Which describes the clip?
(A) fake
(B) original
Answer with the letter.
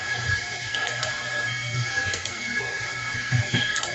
A